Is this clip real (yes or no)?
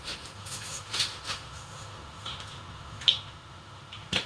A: no